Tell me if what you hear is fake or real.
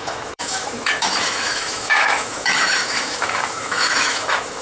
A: fake